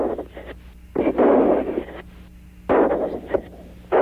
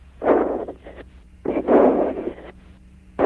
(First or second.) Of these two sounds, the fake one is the second